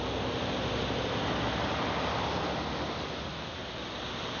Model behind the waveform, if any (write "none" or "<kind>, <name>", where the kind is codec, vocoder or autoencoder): none